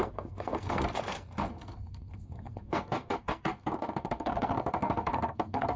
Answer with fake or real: fake